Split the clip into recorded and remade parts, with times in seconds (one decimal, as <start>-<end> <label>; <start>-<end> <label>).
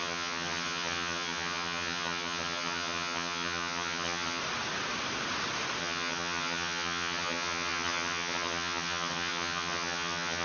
0.0-4.4 remade; 4.4-5.8 recorded; 5.8-10.4 remade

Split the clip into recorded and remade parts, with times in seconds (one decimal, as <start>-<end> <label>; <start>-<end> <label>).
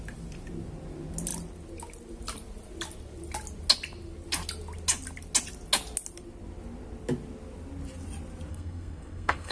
0.0-8.5 recorded; 8.5-9.5 remade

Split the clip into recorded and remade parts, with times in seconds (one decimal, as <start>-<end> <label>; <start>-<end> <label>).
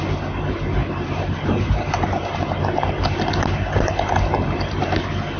0.0-0.8 recorded; 0.8-2.4 remade; 2.4-5.4 recorded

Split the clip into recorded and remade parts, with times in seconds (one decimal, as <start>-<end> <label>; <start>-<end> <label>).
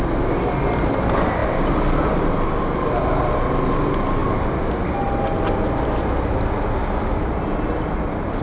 0.0-8.4 recorded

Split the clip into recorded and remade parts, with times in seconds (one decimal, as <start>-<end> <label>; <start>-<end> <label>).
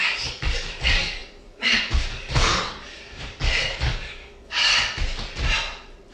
0.0-4.7 remade; 4.7-6.1 recorded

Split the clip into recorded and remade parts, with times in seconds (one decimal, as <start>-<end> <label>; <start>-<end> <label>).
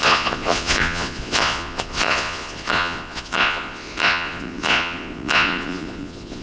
0.0-6.4 remade